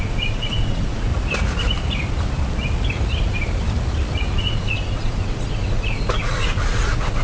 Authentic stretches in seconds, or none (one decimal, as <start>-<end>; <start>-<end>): 1.1-4.4